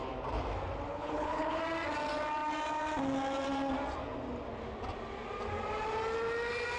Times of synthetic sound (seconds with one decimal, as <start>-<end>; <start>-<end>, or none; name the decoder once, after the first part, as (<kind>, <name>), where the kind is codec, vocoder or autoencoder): 0.9-1.6 (codec, HILCodec)